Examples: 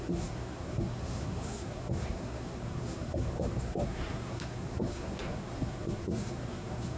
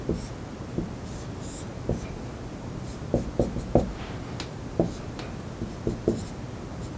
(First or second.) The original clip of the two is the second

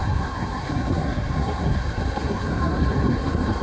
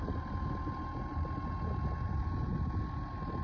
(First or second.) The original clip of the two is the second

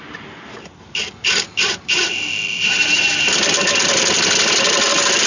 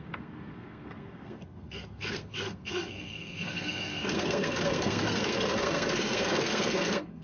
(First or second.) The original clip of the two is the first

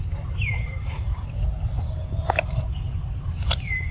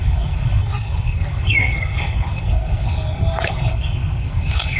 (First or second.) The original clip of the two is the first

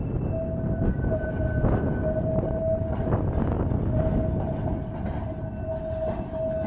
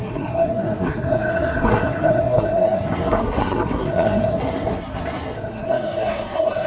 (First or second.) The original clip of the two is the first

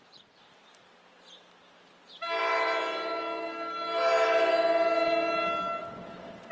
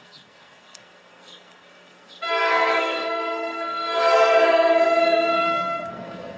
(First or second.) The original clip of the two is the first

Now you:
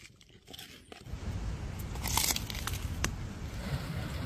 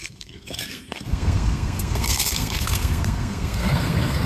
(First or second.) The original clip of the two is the first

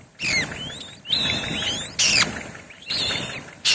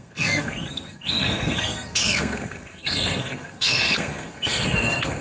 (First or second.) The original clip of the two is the first